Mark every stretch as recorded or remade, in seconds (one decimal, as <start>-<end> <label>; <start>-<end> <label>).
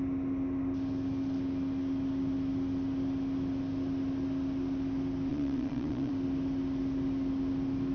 0.0-5.3 recorded; 5.3-6.1 remade; 6.1-7.9 recorded